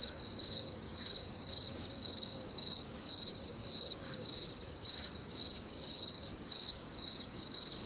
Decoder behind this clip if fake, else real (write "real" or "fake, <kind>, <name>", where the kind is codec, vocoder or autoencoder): fake, codec, DAC